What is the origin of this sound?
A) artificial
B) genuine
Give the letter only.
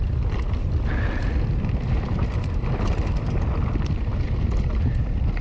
A